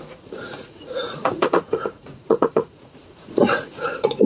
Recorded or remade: remade